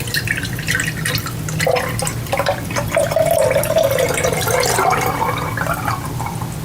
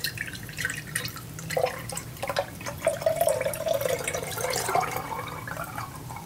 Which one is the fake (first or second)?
second